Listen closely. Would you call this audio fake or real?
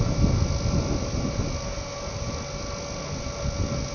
real